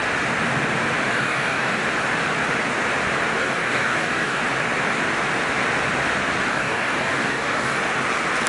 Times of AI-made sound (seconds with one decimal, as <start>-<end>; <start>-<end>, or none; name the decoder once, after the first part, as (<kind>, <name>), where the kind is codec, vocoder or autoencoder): 1.1-1.8 (codec, DAC); 3.4-4.4; 6.5-7.8